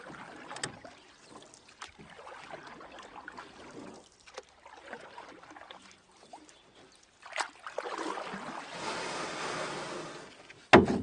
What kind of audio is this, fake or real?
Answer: real